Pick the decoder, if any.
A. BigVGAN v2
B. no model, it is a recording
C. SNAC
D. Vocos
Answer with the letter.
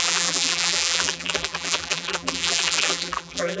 A